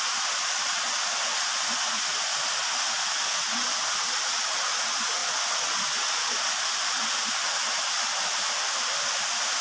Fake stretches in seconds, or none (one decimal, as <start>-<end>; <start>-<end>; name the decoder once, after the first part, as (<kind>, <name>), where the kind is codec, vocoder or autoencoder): none